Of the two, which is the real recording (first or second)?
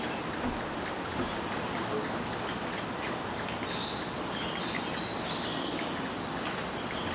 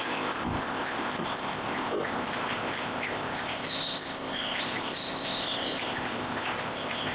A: first